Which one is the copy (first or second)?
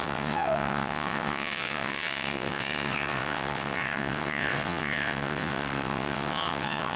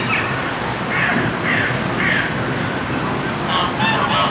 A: first